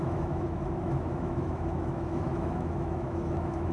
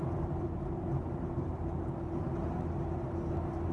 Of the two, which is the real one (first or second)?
second